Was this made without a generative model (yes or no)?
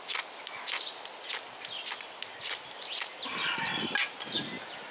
yes